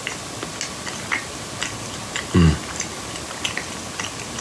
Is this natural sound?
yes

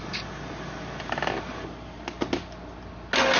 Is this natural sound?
yes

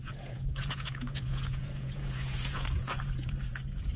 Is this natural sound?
no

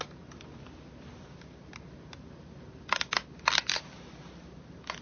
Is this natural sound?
yes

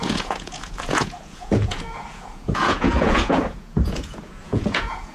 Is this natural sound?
no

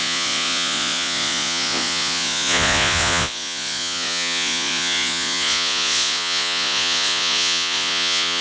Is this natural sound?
no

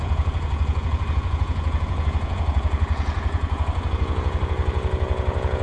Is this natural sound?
no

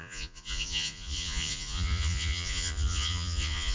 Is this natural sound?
no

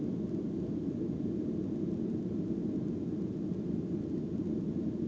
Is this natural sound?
yes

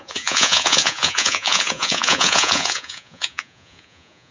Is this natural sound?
no